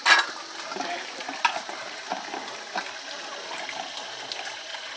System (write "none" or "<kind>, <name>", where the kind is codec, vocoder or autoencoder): none